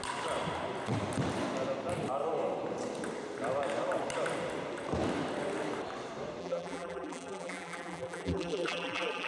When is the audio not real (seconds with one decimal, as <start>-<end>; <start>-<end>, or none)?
6.4-9.3